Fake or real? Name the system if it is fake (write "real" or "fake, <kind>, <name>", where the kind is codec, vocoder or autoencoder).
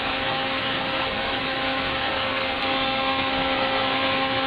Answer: fake, codec, SNAC